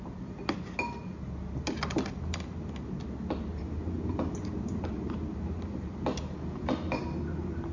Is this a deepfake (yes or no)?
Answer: no